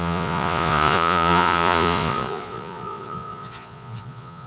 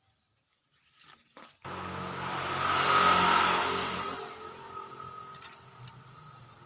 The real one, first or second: second